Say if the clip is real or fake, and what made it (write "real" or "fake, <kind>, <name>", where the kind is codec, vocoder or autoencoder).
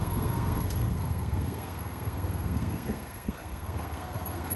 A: fake, codec, SNAC